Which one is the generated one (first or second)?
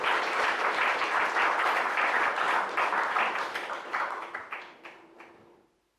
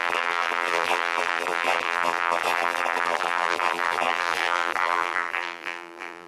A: second